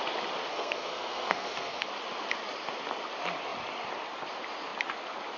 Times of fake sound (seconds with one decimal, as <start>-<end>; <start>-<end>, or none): 0.5-1.9